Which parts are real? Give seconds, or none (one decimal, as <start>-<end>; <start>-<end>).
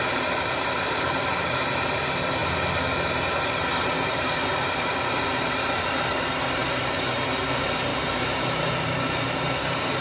2.4-4.1